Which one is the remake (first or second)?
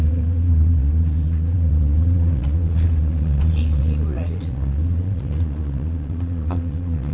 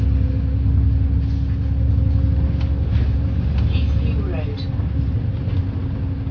first